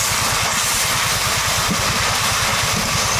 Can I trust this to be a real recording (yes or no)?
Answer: yes